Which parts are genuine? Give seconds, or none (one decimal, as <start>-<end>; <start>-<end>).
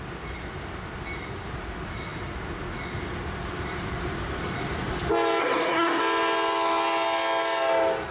0.0-5.4; 6.0-8.1